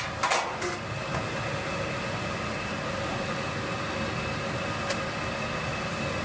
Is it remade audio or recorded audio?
recorded